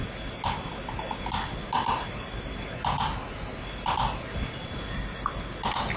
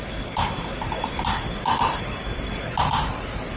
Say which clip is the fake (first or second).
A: second